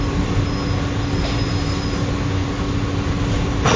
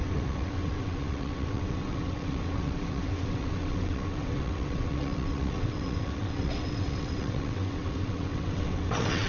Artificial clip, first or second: second